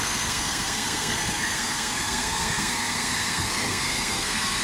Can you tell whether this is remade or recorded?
remade